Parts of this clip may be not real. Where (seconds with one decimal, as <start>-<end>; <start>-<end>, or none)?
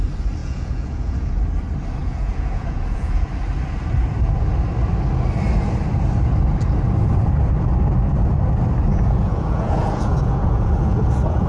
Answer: 0.4-1.4; 2.0-3.3; 8.9-11.5